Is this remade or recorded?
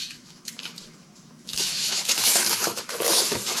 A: remade